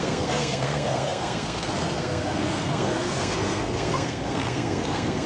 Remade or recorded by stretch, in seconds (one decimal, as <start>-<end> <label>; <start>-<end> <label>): 0.0-5.3 remade